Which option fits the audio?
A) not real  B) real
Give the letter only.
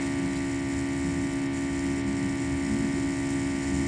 B